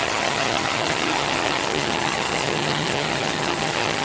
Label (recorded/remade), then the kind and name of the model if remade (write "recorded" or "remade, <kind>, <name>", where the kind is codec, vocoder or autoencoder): remade, vocoder, HiFi-GAN